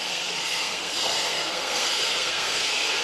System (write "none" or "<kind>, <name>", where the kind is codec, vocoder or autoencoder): codec, SNAC